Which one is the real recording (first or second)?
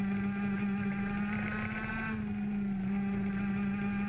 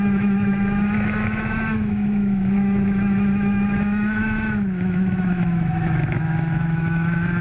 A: first